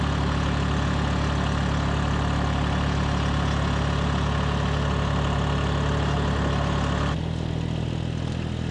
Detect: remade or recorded recorded